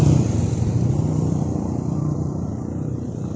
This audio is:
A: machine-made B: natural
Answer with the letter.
A